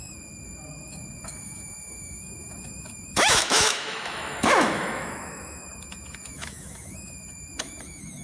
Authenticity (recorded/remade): remade